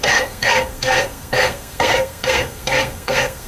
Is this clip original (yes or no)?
no